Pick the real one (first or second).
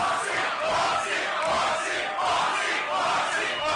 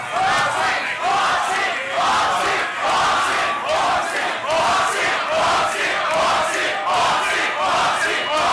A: second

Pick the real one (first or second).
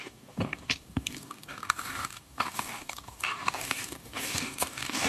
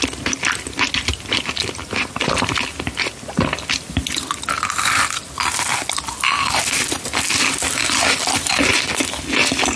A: second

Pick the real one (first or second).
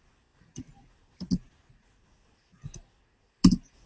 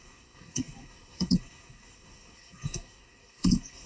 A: first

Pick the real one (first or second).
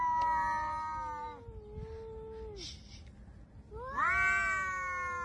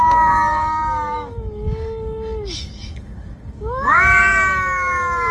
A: first